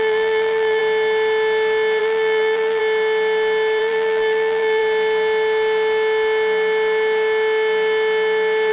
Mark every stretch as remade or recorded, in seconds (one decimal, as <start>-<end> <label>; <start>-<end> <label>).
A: 0.0-0.8 remade; 0.8-2.0 recorded; 2.0-2.8 remade; 2.8-3.8 recorded; 3.8-4.8 remade; 4.8-8.7 recorded